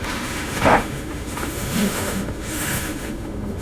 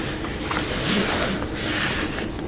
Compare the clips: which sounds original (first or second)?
second